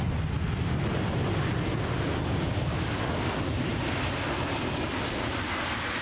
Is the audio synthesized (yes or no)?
no